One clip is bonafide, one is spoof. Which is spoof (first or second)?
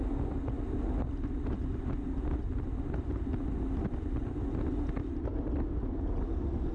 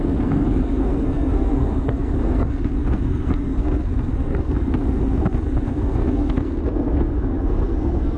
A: second